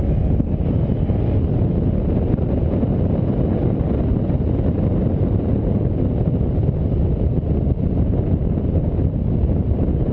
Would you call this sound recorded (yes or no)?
yes